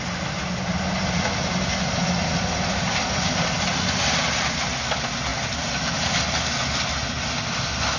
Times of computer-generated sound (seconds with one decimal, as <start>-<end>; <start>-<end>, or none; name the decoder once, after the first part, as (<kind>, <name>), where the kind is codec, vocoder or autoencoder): none